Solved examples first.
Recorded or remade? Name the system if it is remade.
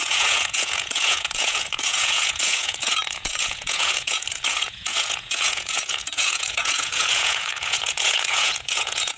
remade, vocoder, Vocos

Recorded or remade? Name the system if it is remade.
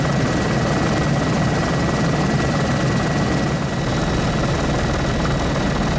recorded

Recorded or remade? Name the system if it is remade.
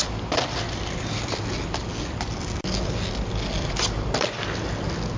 recorded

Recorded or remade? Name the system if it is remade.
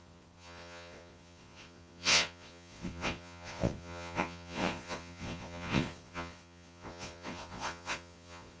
remade, vocoder, Vocos